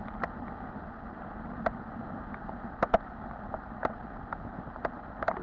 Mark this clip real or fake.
real